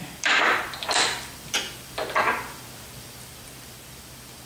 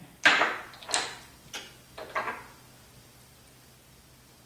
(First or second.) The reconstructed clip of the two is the first